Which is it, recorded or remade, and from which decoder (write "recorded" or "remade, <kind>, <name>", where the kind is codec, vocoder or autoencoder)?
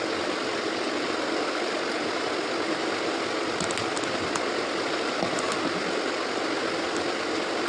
recorded